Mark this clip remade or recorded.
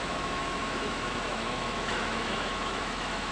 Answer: remade